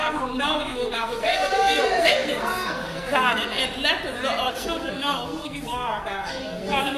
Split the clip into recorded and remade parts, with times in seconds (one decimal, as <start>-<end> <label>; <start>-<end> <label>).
0.0-3.6 remade; 3.6-4.5 recorded; 4.5-7.0 remade